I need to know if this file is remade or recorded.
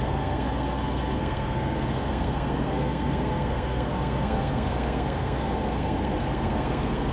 remade